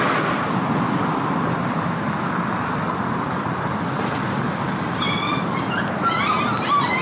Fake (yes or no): no